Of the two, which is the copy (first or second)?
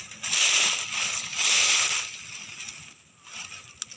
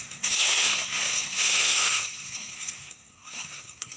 second